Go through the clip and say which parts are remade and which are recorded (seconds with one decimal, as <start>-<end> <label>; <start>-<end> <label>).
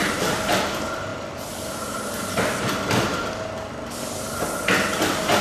0.0-5.4 recorded